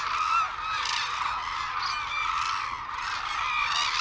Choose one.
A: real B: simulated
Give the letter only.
A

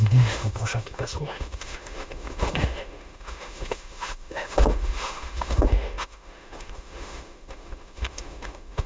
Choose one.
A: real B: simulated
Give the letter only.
B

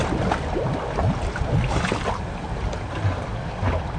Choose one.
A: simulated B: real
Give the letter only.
B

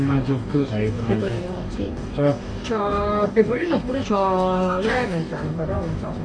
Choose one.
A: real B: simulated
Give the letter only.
B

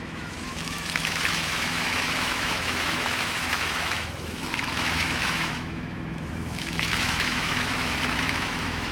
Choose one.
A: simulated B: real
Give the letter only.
A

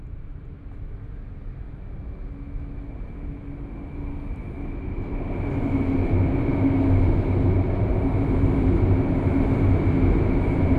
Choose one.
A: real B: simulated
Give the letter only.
A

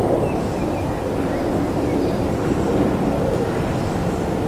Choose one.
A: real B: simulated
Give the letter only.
A